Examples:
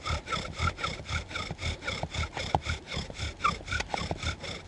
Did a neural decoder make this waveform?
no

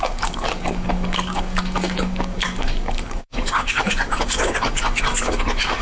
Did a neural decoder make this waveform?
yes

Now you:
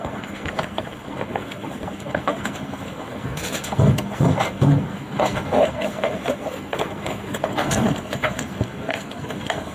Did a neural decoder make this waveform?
yes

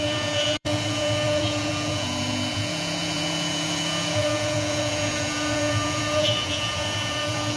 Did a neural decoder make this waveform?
yes